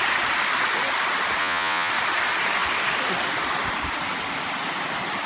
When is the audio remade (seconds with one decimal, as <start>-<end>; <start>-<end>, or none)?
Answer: 1.4-1.9